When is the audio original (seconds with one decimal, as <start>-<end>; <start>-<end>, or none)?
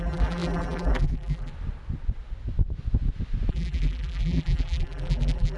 1.5-3.5